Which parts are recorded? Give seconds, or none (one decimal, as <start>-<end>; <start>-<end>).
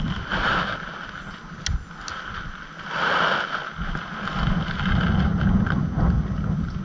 0.0-6.8